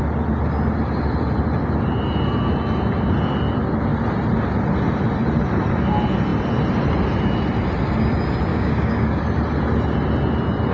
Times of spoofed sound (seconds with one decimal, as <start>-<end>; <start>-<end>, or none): 8.5-9.2